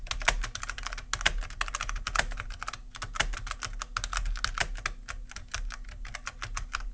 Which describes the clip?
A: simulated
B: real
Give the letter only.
B